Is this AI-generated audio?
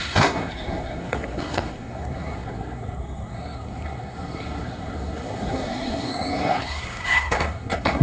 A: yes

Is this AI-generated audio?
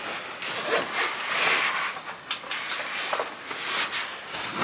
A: no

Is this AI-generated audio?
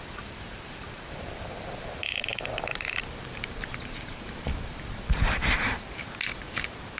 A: yes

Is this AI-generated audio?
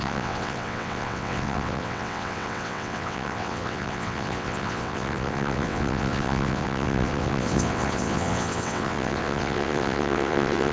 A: yes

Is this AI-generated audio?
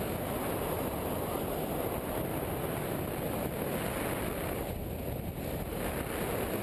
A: no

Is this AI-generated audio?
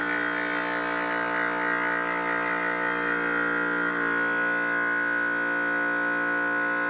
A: no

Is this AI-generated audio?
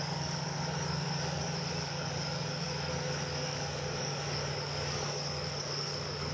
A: yes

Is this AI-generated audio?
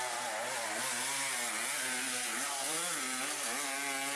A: no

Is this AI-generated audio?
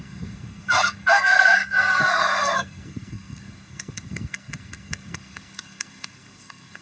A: yes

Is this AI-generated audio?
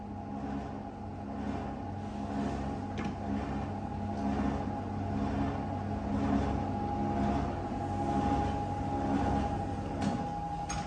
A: no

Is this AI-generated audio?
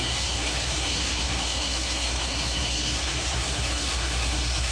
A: yes